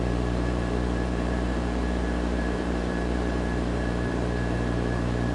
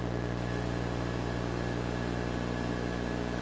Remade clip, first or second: first